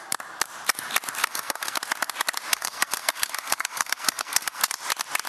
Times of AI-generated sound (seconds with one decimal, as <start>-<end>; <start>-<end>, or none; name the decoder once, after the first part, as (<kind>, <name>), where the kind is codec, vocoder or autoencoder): 1.2-1.8 (codec, SNAC); 2.5-4.6